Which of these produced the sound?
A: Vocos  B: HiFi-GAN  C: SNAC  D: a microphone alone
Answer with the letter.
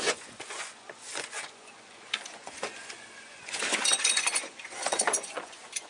A